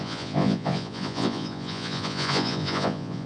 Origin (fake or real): fake